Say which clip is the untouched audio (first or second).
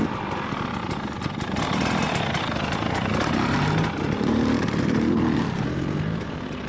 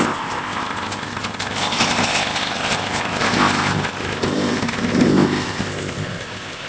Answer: first